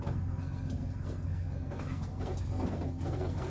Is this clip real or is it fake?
fake